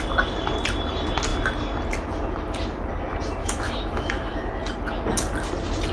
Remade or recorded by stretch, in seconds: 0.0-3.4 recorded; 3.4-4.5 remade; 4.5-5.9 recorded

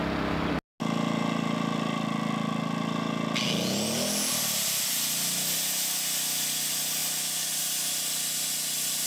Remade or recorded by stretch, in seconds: 0.0-9.1 recorded

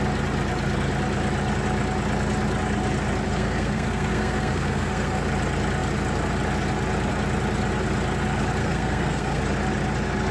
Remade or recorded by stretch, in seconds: 0.0-3.3 recorded; 3.3-5.2 remade; 5.2-8.6 recorded; 8.6-9.4 remade; 9.4-10.3 recorded

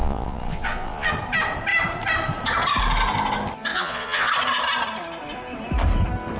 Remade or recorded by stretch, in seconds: 0.0-1.1 remade; 1.1-3.7 recorded; 3.7-4.3 remade; 4.3-6.4 recorded

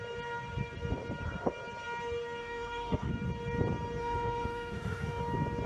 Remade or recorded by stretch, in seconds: 0.0-2.4 recorded; 2.4-3.1 remade; 3.1-4.0 recorded; 4.0-5.2 remade; 5.2-5.7 recorded